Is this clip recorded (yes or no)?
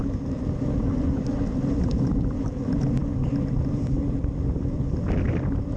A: no